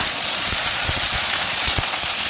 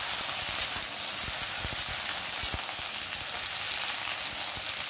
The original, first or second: second